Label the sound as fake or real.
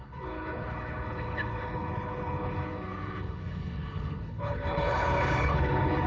fake